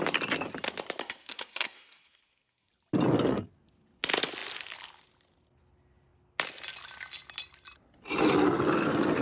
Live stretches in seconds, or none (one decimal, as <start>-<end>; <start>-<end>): 0.0-1.0; 2.7-9.2